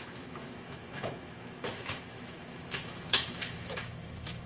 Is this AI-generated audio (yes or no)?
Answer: yes